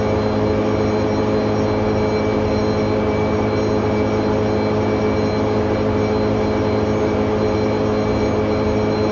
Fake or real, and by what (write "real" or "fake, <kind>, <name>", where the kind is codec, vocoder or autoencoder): real